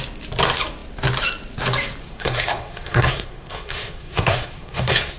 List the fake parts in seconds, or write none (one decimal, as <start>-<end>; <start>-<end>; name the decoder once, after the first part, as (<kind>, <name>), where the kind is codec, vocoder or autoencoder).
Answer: 2.0-5.2 (codec, SNAC)